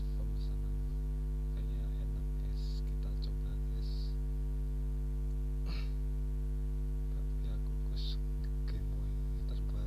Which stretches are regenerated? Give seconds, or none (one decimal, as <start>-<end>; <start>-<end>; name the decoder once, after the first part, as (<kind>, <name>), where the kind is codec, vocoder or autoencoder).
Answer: 8.8-9.4 (autoencoder, DAC-VAE)